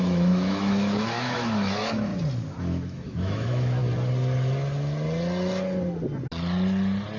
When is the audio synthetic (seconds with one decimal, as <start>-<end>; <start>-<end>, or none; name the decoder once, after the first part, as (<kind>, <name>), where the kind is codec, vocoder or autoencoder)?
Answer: 0.0-2.1 (autoencoder, DAC-VAE); 2.6-3.8